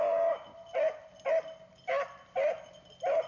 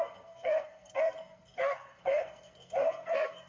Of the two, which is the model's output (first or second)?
second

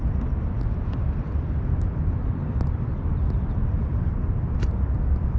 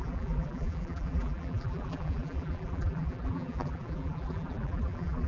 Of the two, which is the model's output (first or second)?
second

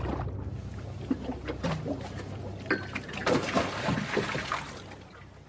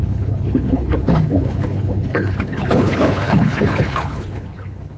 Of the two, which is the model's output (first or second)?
second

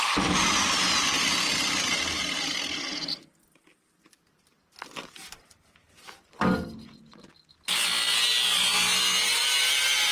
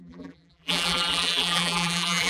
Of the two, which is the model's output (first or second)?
second